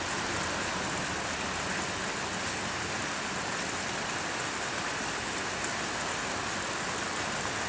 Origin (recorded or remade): recorded